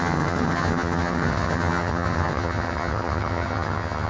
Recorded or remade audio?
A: remade